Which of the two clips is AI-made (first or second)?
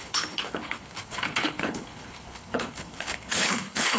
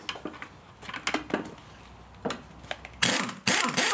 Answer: first